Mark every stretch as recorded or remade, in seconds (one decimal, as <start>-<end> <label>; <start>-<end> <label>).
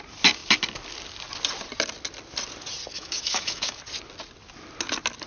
0.0-2.9 recorded; 2.9-3.8 remade; 3.8-5.3 recorded